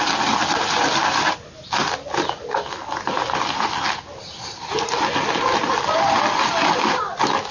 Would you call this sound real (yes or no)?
yes